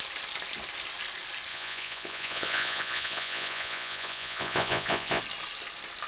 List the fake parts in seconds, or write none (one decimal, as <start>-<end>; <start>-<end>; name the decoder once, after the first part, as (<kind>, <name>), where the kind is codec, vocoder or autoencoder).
1.5-5.2 (vocoder, Vocos)